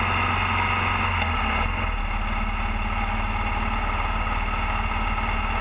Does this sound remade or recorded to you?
recorded